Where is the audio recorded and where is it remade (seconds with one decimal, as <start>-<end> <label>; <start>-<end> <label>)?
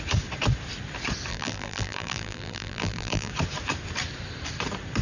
0.0-1.3 recorded; 1.3-3.3 remade; 3.3-5.0 recorded